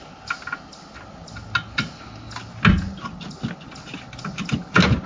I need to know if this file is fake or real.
real